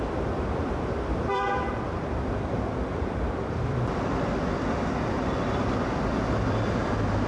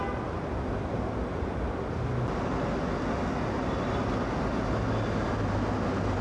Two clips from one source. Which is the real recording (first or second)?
second